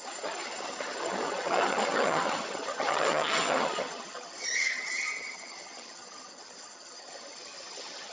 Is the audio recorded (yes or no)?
no